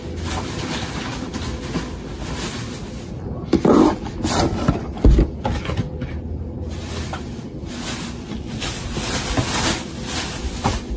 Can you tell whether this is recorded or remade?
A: recorded